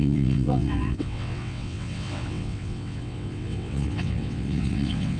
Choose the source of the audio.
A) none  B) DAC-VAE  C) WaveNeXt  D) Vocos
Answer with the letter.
C